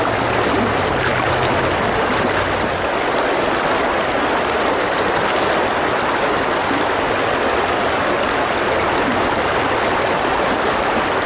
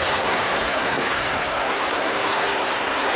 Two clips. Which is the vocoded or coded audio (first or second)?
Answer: second